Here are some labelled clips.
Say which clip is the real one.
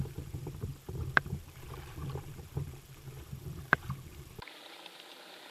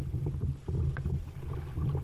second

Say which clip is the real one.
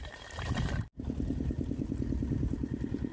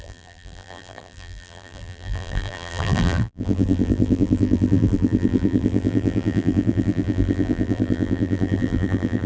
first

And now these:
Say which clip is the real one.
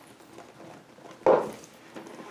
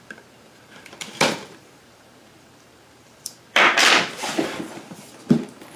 first